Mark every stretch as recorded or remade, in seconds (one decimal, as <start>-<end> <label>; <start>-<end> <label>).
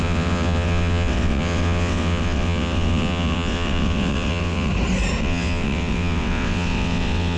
0.0-4.7 remade; 4.7-5.2 recorded; 5.2-7.4 remade